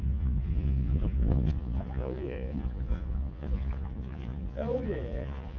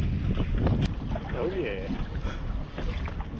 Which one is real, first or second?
second